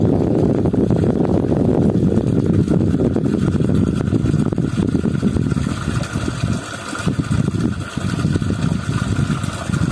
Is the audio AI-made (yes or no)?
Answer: no